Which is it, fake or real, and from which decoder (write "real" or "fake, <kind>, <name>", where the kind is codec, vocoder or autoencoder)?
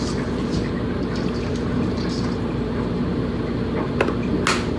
real